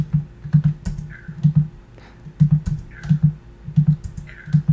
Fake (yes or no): no